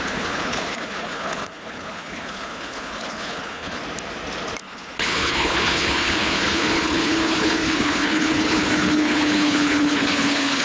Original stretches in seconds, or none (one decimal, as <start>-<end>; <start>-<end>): 3.8-4.6